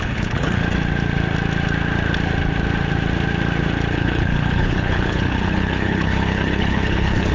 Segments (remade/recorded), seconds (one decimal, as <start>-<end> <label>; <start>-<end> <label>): 0.0-0.6 remade; 0.6-3.9 recorded; 3.9-7.3 remade